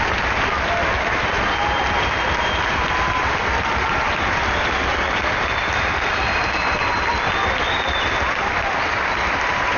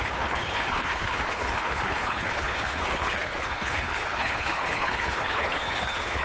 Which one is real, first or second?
first